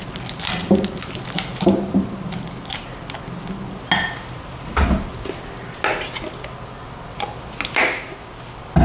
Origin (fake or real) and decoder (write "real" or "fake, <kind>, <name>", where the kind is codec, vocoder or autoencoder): real